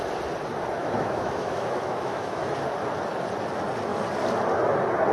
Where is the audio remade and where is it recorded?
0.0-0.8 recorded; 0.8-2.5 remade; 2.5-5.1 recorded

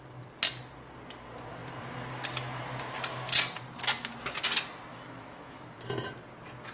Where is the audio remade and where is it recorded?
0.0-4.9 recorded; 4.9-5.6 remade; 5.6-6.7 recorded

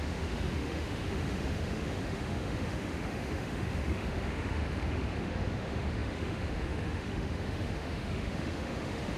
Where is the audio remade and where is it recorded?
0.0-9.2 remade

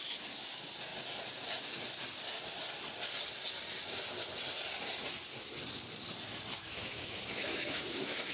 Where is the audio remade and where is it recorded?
0.0-6.5 recorded; 6.5-8.3 remade